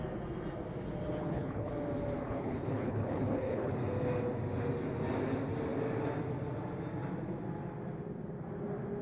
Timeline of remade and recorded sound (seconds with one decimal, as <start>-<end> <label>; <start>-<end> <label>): 0.0-1.2 recorded; 1.2-1.7 remade; 1.7-2.2 recorded; 2.2-3.7 remade; 3.7-9.0 recorded